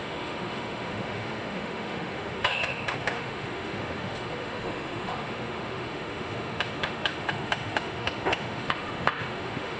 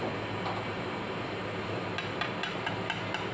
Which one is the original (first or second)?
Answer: second